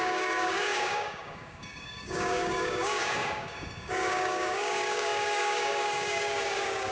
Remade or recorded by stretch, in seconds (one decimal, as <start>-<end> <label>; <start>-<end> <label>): 0.0-6.9 remade